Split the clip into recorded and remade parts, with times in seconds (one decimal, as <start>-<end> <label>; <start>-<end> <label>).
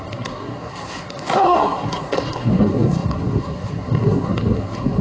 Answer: 0.0-5.0 remade